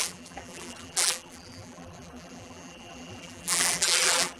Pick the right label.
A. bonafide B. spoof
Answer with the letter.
B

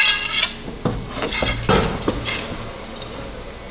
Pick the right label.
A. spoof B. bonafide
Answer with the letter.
B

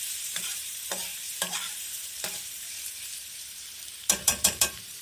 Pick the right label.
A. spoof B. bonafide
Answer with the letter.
A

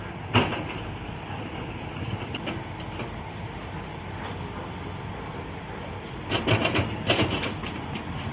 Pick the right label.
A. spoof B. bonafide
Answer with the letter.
B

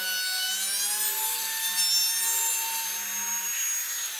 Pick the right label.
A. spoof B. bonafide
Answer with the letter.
B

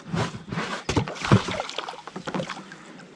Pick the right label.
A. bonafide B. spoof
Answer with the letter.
A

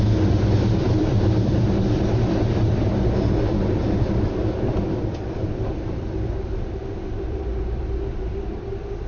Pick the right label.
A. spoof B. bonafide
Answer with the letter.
A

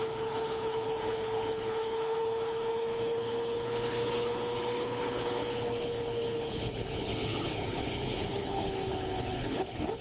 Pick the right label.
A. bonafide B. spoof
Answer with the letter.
B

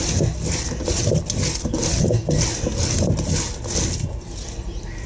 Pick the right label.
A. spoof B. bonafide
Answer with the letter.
B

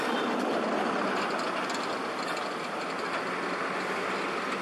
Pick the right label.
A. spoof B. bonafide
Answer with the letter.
B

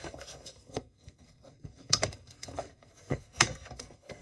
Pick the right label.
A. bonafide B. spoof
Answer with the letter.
B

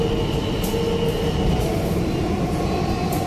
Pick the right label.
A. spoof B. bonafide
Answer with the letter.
B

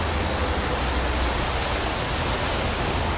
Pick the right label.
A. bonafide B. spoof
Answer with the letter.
A